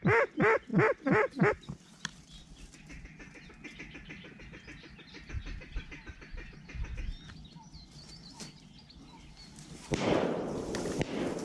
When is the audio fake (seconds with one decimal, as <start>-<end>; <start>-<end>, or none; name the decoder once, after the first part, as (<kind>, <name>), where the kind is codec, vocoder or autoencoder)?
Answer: none

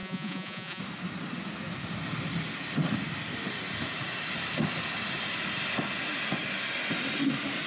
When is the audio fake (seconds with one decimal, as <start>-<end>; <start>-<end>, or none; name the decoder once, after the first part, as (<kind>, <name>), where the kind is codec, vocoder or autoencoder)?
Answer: 0.0-0.8 (vocoder, Vocos)